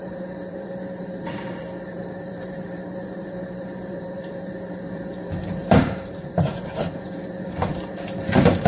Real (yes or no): no